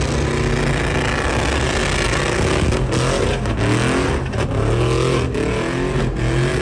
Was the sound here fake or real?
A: real